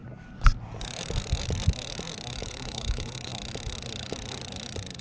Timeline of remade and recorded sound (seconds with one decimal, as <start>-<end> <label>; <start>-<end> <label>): 0.0-2.4 recorded; 2.4-3.3 remade; 3.3-5.0 recorded